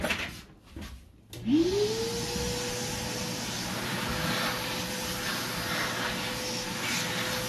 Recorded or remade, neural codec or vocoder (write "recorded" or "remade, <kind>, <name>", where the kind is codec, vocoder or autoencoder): recorded